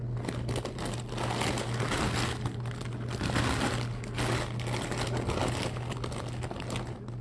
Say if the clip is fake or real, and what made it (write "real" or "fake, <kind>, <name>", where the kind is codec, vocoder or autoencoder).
real